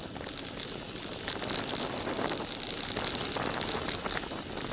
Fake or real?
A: real